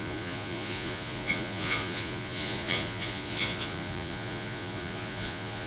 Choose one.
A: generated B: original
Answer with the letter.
A